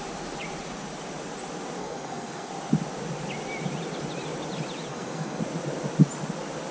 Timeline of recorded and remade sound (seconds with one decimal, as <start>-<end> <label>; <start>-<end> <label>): 0.0-1.8 recorded; 1.8-2.5 remade; 2.5-4.9 recorded; 4.9-5.4 remade; 5.4-6.7 recorded